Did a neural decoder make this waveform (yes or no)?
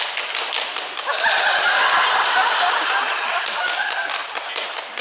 no